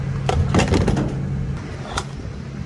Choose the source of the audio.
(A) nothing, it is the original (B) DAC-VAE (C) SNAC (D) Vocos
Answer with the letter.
A